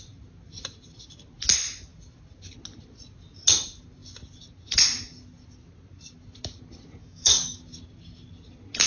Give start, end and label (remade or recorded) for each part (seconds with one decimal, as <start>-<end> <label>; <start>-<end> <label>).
0.0-7.0 recorded; 7.0-7.6 remade; 7.6-8.9 recorded